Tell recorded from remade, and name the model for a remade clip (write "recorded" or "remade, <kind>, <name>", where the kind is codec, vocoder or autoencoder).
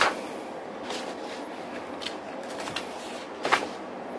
recorded